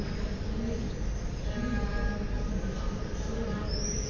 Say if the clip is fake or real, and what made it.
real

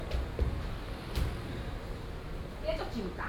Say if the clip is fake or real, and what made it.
fake, vocoder, BigVGAN v2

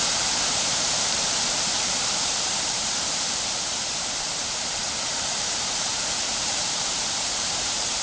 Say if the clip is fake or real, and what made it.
fake, vocoder, BigVGAN v2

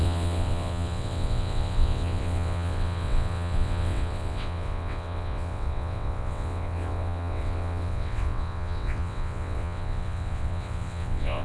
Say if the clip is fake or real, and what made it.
fake, vocoder, WaveNeXt